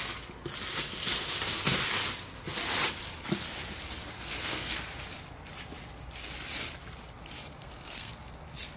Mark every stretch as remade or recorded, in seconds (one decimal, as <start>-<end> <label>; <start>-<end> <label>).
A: 0.0-4.4 recorded; 4.4-4.9 remade; 4.9-7.6 recorded; 7.6-8.1 remade; 8.1-8.8 recorded